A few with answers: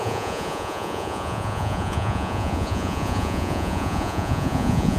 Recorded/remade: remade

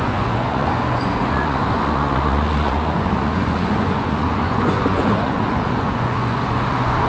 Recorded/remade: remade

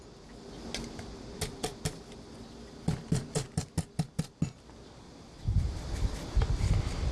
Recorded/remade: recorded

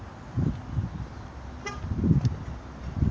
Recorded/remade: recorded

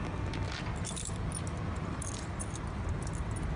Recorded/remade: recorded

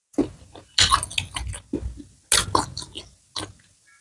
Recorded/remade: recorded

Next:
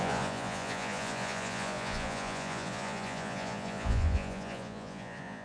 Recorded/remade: remade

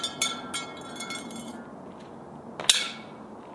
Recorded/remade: recorded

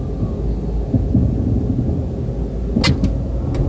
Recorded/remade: recorded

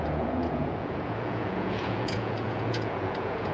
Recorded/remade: remade